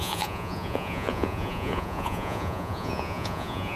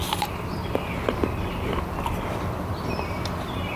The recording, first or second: second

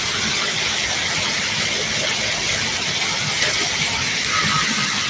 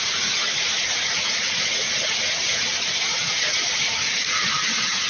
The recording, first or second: first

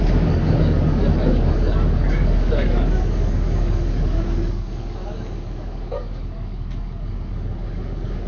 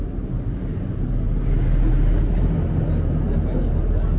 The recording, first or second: second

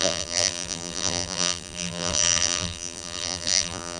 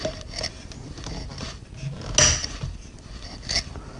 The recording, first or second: second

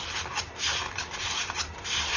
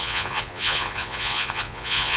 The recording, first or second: first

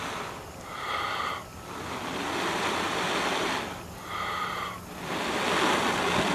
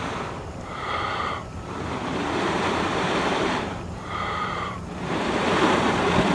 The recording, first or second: first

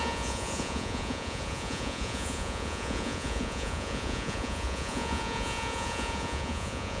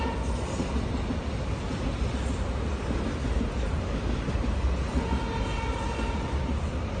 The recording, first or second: second